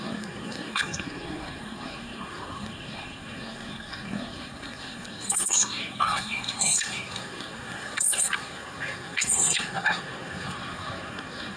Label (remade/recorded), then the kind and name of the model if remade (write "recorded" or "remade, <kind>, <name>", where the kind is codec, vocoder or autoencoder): remade, codec, SNAC